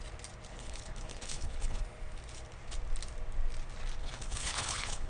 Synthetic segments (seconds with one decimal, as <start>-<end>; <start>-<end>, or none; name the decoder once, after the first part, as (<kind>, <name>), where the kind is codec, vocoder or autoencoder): 0.5-1.8 (codec, HILCodec); 4.0-5.1